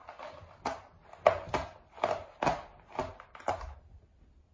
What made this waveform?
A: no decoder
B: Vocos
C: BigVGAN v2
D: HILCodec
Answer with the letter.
A